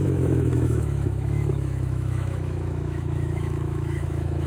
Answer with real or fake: fake